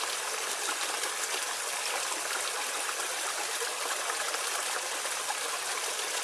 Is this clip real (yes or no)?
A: yes